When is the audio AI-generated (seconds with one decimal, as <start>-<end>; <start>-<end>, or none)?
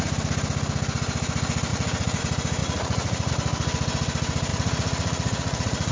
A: 1.7-2.2; 2.6-3.3; 4.5-5.9